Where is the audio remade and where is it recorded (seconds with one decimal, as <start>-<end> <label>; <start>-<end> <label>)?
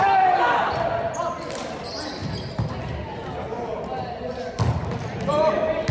0.0-5.9 recorded